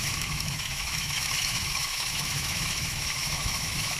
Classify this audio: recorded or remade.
remade